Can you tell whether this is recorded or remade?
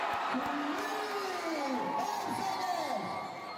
recorded